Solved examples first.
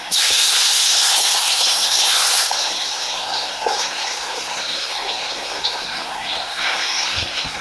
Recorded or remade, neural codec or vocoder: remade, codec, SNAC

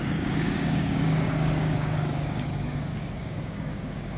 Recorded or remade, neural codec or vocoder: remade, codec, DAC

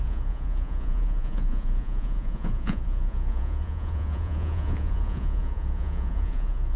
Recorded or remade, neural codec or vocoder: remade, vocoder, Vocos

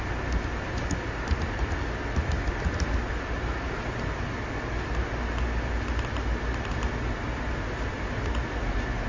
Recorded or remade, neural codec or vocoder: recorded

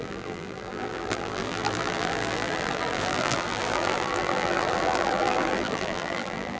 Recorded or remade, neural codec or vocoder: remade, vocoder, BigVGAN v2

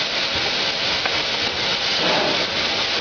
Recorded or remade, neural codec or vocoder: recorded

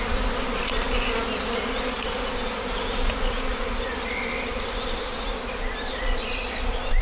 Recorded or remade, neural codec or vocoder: recorded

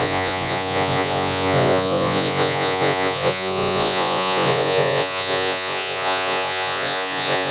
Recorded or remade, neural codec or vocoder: remade, vocoder, Vocos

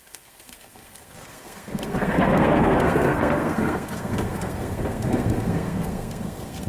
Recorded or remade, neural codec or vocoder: remade, codec, SNAC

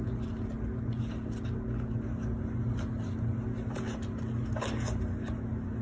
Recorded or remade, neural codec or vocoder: recorded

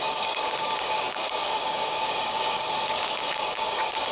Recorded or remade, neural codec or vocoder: remade, codec, DAC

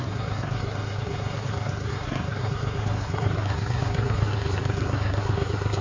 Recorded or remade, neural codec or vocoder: remade, codec, SNAC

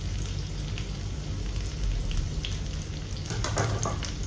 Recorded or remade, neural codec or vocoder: recorded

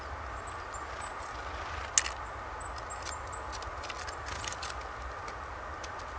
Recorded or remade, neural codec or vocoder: recorded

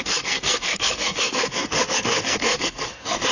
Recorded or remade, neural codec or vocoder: remade, codec, SNAC